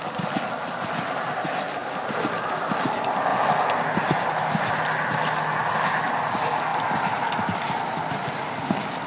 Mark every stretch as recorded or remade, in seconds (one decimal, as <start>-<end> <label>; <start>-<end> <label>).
0.0-9.1 recorded